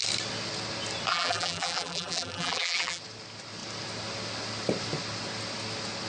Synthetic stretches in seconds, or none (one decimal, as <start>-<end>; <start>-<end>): 1.1-3.0

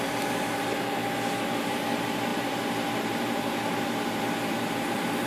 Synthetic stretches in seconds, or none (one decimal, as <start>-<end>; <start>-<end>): 0.0-1.0; 1.6-5.3

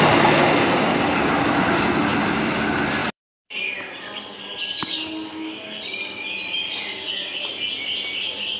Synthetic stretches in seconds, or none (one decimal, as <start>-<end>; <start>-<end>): 2.1-2.6; 3.0-3.6

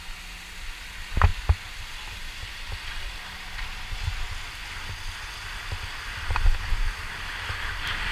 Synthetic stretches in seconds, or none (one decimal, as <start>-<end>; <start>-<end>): 1.3-4.7

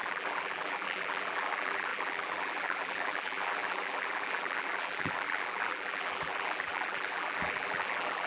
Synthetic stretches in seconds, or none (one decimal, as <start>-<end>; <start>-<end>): 0.0-8.3

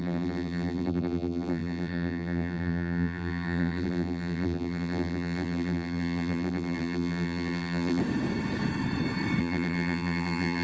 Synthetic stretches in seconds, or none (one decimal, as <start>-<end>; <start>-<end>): 0.0-8.0; 9.4-10.6